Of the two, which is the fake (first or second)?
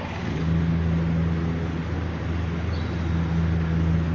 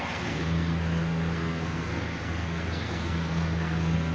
second